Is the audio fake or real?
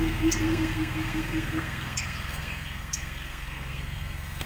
fake